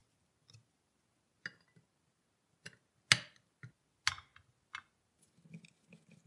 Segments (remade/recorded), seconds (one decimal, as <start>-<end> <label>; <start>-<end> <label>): 0.0-6.3 recorded